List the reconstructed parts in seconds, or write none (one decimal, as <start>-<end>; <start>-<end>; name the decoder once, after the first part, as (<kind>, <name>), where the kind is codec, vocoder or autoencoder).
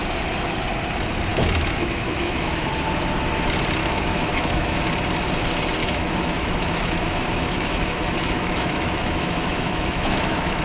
1.3-2.7 (autoencoder, DAC-VAE); 3.8-4.7; 5.8-10.6